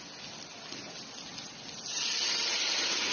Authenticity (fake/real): real